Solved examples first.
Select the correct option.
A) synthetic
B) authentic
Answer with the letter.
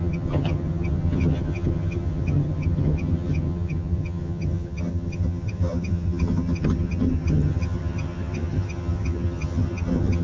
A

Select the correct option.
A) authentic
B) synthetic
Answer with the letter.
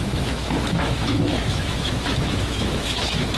B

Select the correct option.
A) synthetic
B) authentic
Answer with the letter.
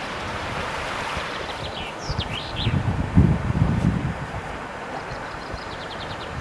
A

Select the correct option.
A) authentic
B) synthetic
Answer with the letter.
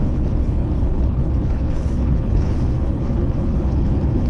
B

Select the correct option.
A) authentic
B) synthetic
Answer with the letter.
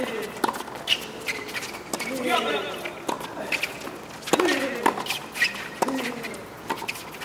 A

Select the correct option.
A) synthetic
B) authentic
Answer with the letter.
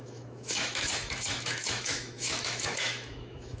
A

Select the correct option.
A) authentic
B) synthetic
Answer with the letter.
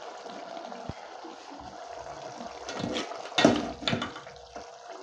A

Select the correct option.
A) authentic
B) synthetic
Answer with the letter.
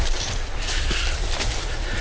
A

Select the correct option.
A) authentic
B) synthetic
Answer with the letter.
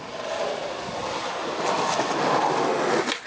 A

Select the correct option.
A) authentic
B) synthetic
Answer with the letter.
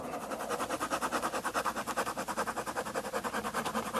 A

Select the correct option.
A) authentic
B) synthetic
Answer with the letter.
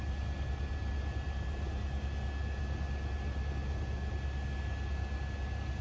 A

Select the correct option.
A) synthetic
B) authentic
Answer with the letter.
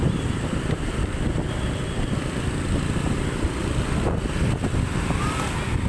B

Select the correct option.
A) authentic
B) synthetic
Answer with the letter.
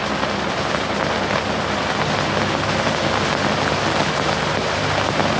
A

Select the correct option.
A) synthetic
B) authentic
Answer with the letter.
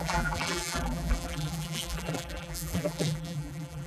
A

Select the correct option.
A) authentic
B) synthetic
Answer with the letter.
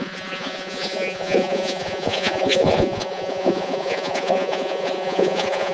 B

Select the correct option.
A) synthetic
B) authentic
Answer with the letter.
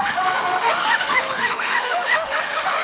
A